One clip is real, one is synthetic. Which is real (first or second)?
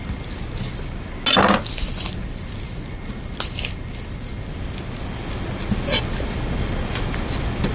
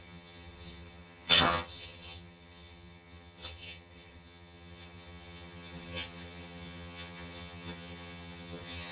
first